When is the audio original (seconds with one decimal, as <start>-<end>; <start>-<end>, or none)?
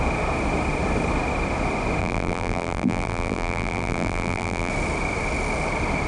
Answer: 0.0-2.0; 4.7-6.1